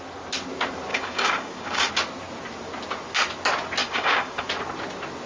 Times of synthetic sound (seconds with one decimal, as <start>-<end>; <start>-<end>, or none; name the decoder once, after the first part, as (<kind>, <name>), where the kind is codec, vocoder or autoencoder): 0.9-1.9 (codec, DAC); 3.8-4.5